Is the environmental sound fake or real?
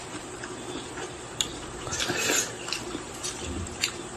fake